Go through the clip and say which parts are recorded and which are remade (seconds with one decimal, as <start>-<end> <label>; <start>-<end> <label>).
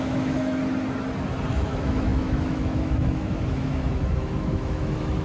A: 0.0-0.6 remade; 0.6-1.5 recorded; 1.5-5.2 remade